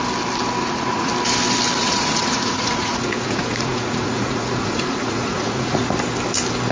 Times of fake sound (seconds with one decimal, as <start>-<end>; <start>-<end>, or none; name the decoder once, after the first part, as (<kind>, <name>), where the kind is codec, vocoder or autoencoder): 0.6-1.1 (vocoder, Vocos); 1.8-5.8